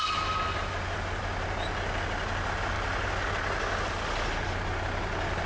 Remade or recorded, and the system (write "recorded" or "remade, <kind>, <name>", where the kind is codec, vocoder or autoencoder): recorded